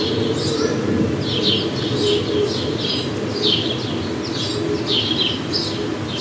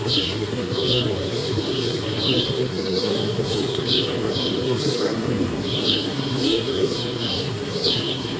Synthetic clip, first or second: second